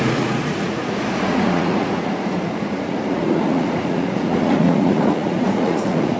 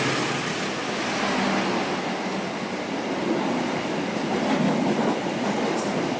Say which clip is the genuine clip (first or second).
second